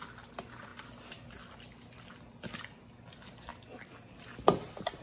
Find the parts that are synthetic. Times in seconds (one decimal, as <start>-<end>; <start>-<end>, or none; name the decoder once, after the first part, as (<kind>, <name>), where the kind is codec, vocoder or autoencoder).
none